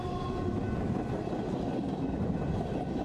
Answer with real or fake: real